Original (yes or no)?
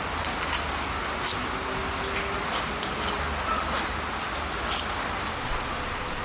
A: yes